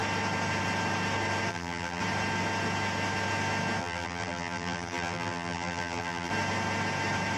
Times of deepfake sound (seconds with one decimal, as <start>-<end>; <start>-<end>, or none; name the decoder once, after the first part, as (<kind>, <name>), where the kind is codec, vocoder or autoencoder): 1.5-2.0 (vocoder, BigVGAN v2); 3.8-6.3